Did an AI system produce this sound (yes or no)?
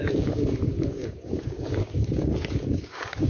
yes